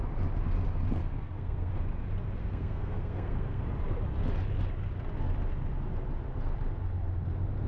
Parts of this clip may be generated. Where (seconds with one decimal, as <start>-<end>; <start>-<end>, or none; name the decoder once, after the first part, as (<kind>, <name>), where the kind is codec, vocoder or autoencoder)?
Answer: 1.0-1.7 (codec, SNAC); 2.4-3.7